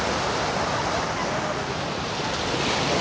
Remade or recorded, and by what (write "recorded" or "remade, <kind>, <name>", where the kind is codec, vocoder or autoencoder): recorded